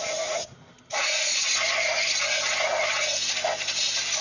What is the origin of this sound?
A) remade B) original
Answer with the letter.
B